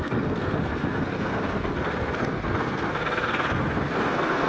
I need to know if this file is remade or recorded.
remade